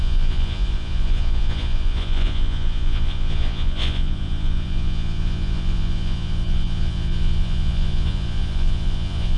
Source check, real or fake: fake